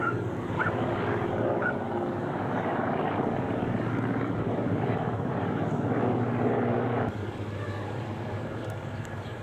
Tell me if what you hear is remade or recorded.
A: remade